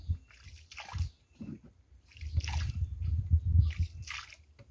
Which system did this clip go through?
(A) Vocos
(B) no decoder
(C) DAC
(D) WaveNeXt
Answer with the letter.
B